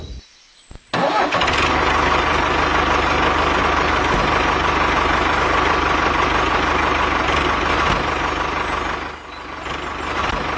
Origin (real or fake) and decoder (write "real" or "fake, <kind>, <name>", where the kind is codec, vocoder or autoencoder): real